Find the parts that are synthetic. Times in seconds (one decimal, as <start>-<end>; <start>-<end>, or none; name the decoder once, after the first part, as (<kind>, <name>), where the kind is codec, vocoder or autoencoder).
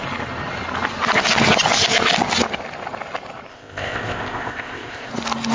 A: 3.5-5.1 (codec, ZipCodec)